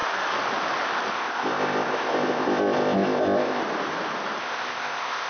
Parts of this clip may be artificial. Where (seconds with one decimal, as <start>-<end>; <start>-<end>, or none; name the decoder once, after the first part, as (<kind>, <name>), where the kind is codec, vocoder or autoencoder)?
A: 1.1-3.6 (codec, ZipCodec); 4.4-5.3